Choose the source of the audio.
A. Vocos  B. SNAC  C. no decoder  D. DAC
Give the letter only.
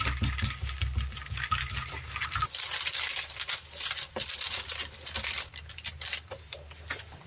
C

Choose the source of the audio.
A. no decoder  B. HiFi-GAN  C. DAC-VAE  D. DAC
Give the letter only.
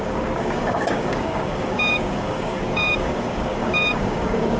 D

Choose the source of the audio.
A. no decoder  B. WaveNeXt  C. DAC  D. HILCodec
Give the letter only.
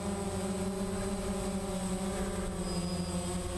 A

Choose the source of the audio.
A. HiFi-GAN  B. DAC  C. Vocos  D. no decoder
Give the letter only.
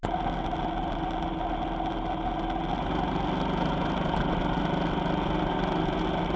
D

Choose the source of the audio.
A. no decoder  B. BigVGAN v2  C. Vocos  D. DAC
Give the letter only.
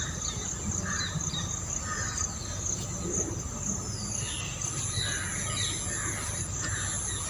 A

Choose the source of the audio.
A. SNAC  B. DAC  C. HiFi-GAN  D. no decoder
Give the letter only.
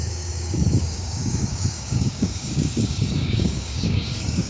B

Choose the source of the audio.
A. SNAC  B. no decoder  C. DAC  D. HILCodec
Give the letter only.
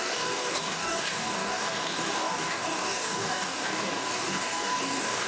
C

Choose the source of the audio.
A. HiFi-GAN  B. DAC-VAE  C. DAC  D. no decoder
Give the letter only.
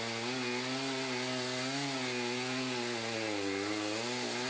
D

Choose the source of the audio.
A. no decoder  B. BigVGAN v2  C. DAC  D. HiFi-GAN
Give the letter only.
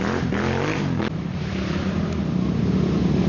A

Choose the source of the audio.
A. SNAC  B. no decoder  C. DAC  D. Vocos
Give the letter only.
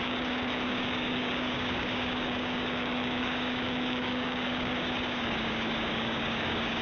C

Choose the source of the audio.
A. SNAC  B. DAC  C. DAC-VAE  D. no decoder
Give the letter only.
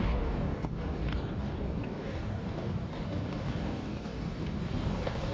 B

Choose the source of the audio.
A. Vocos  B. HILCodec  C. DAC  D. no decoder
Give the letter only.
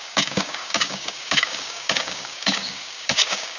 C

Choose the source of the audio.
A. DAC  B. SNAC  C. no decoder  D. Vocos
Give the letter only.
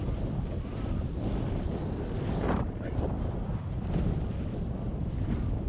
C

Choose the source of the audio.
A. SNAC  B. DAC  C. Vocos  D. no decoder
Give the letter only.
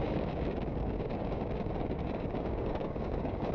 B